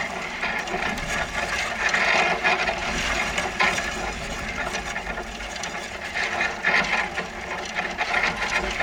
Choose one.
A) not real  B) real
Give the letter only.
B